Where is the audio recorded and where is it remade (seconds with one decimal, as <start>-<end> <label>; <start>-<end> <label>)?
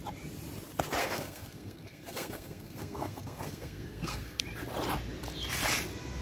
0.0-1.0 recorded; 1.0-4.4 remade; 4.4-6.2 recorded